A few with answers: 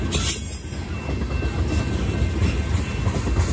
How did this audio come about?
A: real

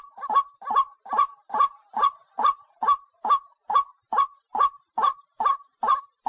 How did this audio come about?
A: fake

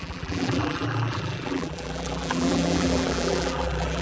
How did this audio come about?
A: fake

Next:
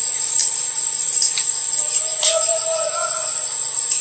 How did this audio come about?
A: real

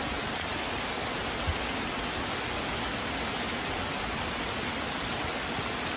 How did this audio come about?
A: real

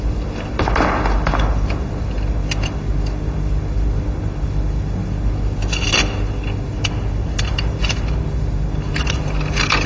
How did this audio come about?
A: real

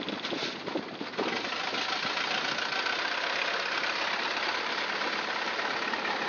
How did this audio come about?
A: real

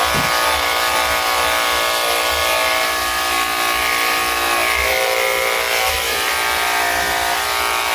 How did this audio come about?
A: real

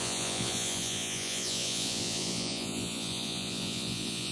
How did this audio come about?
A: fake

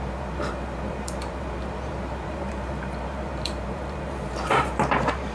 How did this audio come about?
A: fake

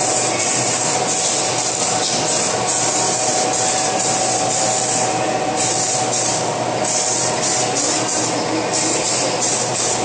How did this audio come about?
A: real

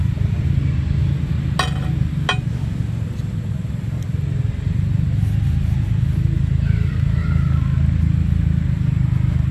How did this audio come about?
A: real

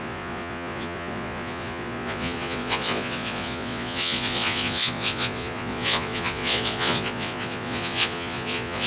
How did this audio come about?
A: fake